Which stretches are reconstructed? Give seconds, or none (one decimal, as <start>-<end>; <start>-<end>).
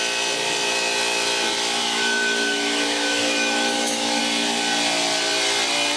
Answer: 1.8-4.2